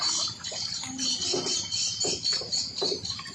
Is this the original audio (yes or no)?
yes